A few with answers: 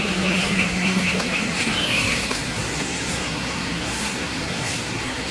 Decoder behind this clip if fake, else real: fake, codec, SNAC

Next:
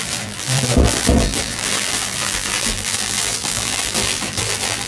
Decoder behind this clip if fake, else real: fake, vocoder, BigVGAN v2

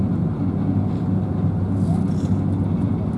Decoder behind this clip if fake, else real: real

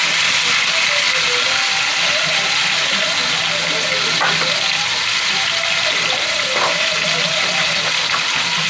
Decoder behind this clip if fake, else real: real